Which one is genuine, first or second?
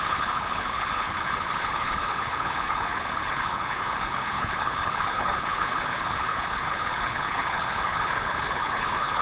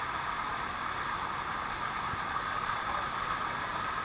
second